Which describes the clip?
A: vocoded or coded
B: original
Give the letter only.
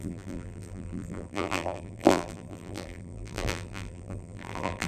A